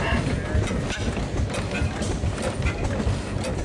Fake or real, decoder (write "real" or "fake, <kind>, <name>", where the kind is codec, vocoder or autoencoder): real